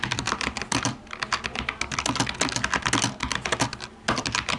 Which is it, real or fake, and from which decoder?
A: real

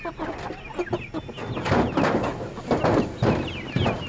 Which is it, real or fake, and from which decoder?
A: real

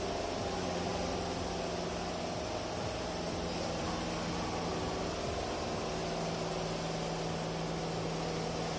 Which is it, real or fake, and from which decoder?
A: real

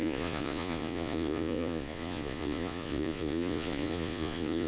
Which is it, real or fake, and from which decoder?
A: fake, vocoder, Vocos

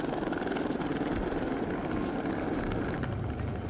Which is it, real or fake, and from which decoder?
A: real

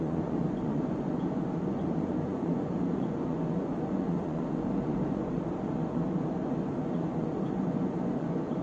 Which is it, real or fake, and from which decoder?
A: fake, vocoder, Vocos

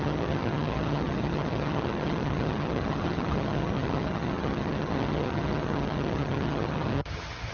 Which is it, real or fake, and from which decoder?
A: fake, vocoder, HiFi-GAN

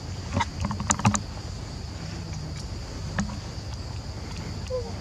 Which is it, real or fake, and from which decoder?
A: real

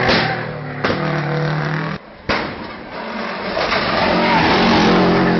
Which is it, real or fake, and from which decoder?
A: real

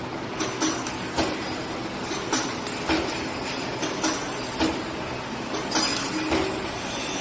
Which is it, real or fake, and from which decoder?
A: real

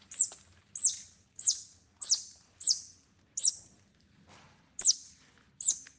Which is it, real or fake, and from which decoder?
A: real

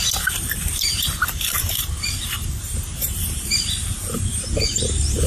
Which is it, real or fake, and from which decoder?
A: fake, vocoder, BigVGAN v2